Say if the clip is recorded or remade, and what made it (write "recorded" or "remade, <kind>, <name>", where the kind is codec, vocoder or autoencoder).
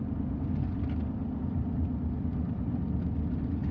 recorded